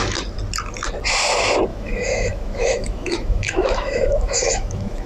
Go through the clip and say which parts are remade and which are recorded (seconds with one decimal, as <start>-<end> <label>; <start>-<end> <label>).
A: 0.0-1.7 recorded; 1.7-5.1 remade